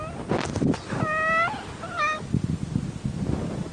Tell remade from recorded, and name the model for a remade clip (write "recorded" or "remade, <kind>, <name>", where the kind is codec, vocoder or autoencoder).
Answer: recorded